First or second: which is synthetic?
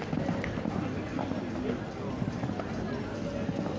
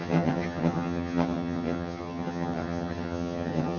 second